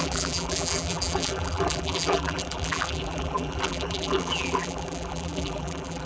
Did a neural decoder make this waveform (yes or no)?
yes